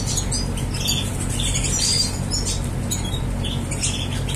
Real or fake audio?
real